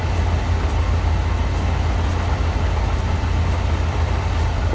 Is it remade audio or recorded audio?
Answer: recorded